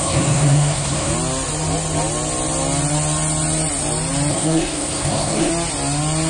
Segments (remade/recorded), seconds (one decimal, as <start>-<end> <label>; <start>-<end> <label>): 0.0-1.1 remade; 1.1-4.3 recorded; 4.3-5.5 remade; 5.5-6.3 recorded